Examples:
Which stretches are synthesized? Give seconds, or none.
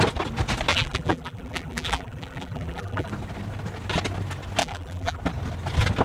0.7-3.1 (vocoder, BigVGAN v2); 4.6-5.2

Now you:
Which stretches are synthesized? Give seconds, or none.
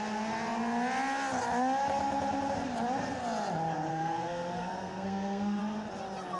3.9-5.6 (codec, SNAC)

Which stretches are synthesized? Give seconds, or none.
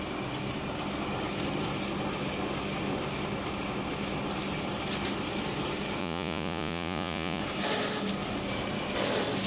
6.0-7.4 (vocoder, Vocos)